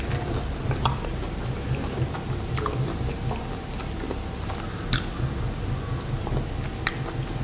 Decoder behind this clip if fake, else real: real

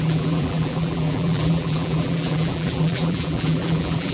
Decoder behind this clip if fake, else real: fake, vocoder, BigVGAN v2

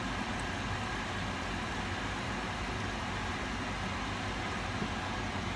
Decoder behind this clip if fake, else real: real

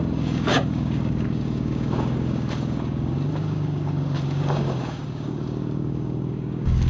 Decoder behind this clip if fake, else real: fake, codec, DAC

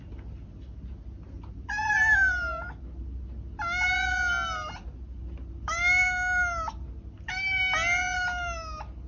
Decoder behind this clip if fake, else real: real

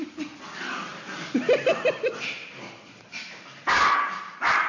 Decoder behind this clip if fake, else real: fake, vocoder, BigVGAN v2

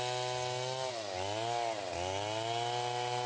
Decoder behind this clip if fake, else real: real